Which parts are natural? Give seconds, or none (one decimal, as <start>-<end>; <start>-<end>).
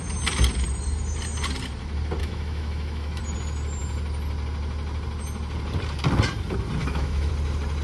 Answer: 0.0-2.2; 3.2-6.8; 7.3-7.8